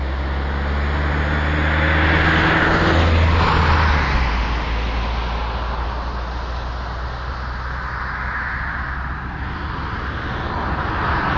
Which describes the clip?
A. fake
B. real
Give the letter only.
B